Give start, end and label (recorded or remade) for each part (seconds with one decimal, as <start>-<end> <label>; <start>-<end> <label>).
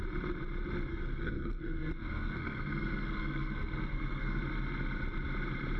0.0-0.9 recorded; 0.9-4.4 remade; 4.4-5.8 recorded